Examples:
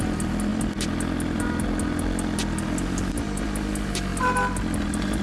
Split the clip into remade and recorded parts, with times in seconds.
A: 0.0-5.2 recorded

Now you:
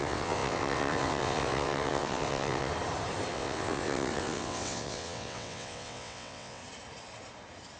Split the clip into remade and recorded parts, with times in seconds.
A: 0.0-2.7 remade; 2.7-3.3 recorded; 3.3-6.6 remade; 6.6-7.8 recorded

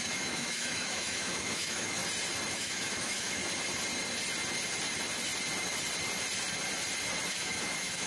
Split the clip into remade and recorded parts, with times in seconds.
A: 0.0-2.0 remade; 2.0-2.5 recorded; 2.5-3.4 remade; 3.4-7.3 recorded; 7.3-8.1 remade